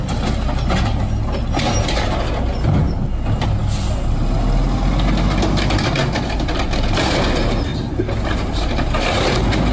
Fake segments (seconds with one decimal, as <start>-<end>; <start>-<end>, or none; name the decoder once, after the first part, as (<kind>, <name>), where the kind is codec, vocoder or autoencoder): none